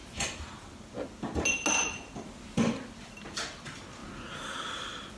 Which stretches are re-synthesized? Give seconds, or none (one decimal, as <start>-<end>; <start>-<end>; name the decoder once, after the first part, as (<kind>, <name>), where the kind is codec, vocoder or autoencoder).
none

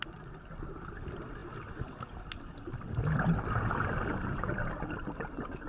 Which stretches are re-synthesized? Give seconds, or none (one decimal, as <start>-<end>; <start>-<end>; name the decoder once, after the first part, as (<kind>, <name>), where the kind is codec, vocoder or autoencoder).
none

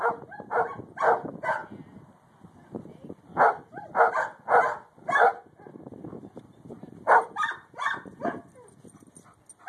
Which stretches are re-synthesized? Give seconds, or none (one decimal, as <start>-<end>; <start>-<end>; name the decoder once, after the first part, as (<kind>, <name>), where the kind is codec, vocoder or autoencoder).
1.6-3.9 (vocoder, BigVGAN v2)

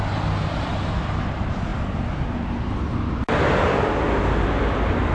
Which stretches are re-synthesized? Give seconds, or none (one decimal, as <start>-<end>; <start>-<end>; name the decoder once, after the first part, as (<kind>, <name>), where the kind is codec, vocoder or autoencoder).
none